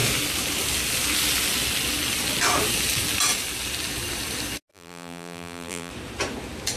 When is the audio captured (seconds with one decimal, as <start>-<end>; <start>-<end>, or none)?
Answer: 0.0-4.7; 5.9-6.8